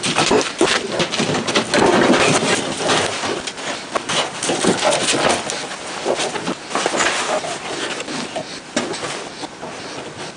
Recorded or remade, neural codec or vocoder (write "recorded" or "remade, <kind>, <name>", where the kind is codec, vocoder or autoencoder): recorded